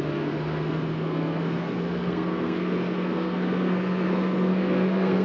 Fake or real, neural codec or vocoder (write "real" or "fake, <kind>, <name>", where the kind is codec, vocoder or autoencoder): fake, codec, SNAC